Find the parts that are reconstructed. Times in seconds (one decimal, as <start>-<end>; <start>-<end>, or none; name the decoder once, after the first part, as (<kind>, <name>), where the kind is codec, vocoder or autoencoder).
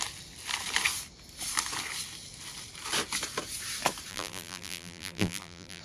4.1-5.8 (vocoder, BigVGAN v2)